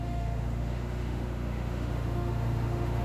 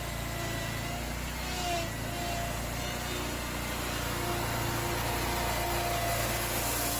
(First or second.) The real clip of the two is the second